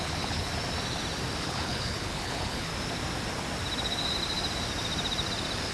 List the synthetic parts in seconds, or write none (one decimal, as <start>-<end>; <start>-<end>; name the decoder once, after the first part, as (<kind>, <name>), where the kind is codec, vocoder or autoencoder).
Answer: 0.0-0.5 (codec, HILCodec); 1.4-2.7